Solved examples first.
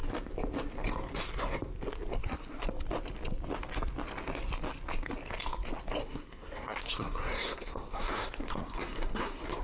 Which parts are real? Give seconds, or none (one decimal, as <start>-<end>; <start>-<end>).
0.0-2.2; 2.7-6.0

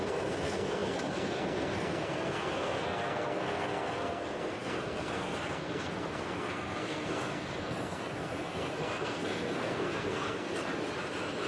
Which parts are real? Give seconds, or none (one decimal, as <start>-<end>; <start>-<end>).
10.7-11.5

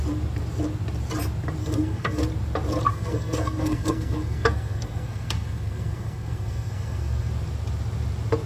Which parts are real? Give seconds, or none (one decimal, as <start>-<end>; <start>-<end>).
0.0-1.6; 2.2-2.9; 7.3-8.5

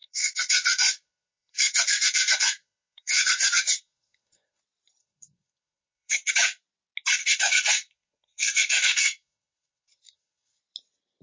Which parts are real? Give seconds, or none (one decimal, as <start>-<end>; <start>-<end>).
4.6-5.0; 6.3-7.2; 10.6-11.2

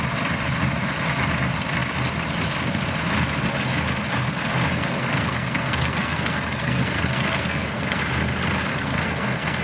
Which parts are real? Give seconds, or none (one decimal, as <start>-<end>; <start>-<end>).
0.0-4.7; 8.0-8.7

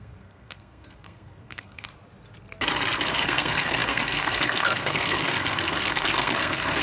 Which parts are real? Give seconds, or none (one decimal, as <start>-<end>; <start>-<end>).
1.9-3.1

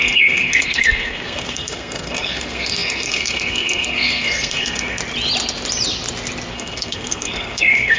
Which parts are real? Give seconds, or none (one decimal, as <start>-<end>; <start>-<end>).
5.0-6.5